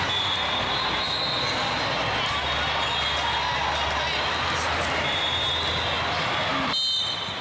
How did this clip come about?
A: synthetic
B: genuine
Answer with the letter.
B